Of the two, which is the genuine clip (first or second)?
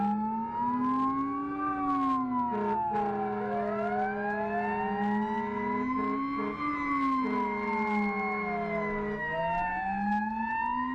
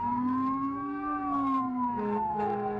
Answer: first